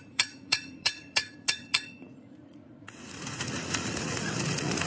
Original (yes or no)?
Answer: no